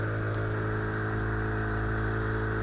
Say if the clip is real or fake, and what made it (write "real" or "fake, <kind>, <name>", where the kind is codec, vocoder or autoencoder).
real